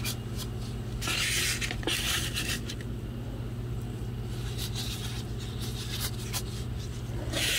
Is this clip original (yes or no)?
yes